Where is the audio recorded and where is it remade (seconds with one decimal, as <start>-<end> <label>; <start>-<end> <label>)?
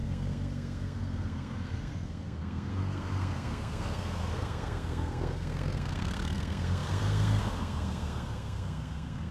0.0-9.3 remade